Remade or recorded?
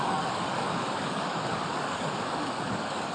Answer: remade